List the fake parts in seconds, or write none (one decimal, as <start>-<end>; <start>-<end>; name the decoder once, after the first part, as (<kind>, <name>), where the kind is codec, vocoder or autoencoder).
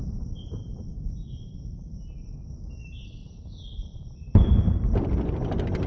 0.6-3.0 (vocoder, BigVGAN v2); 3.9-4.6